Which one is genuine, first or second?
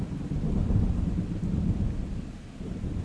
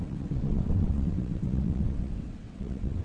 first